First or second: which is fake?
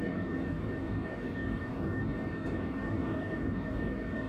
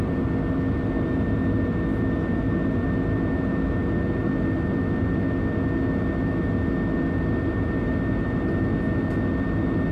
first